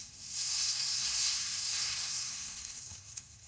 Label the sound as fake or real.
fake